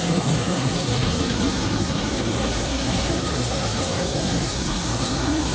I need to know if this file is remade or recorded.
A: remade